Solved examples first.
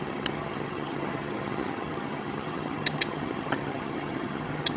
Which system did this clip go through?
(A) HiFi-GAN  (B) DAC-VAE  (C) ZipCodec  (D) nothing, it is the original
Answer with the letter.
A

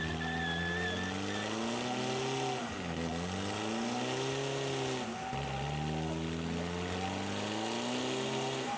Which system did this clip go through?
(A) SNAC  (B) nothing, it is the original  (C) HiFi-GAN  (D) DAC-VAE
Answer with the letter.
B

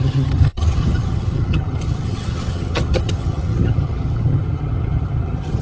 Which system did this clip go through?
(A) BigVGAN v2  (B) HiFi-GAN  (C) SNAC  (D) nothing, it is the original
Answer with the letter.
B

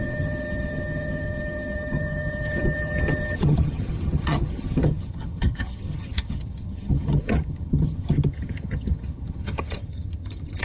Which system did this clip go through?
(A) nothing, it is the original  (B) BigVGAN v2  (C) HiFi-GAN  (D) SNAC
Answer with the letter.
C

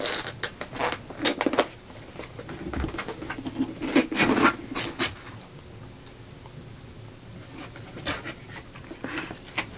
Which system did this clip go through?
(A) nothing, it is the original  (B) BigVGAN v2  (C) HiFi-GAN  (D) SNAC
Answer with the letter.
A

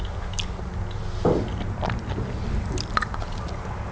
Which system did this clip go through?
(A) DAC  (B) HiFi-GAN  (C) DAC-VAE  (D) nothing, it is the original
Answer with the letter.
D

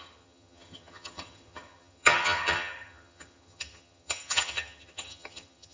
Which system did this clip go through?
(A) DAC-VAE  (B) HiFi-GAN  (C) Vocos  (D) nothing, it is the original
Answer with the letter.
B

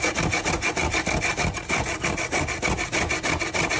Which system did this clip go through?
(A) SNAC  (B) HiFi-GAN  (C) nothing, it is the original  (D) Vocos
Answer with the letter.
C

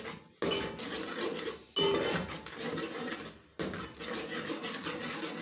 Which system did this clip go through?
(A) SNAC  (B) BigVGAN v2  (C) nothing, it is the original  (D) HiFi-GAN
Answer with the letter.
C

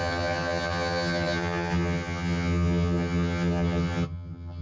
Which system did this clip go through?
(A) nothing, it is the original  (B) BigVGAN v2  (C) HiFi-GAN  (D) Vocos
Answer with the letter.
C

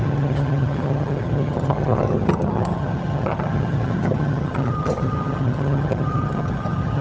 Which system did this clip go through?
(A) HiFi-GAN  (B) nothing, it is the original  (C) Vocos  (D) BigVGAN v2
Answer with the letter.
A